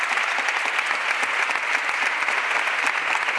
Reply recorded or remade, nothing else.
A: recorded